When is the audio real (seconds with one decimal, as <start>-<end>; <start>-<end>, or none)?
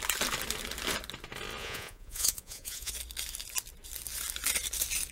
0.0-1.6; 2.9-5.1